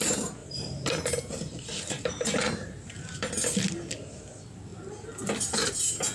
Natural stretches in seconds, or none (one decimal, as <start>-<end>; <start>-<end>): 0.0-0.4; 3.3-6.1